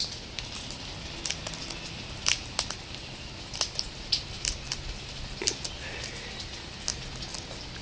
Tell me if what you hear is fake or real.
real